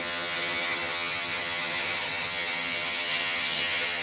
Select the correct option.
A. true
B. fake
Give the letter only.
B